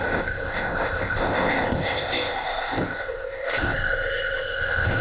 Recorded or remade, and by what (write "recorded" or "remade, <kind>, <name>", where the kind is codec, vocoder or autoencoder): remade, codec, ZipCodec